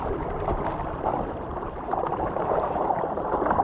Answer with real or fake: fake